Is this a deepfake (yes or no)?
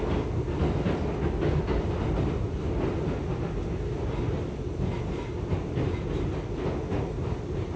no